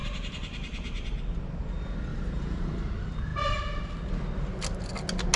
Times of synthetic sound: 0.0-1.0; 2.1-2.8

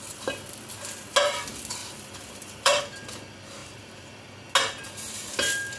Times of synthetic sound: 1.8-2.8; 3.6-4.2

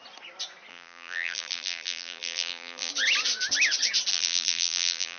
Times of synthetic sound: 0.7-2.9; 4.1-5.2